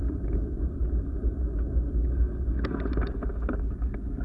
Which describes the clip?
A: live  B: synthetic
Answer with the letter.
A